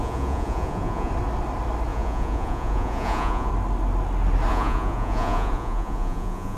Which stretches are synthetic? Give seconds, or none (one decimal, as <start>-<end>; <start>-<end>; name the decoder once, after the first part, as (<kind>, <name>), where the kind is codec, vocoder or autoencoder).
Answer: 0.0-1.1 (vocoder, Vocos); 1.9-3.5; 4.5-6.6